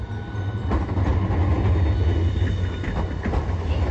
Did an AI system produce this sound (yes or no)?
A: no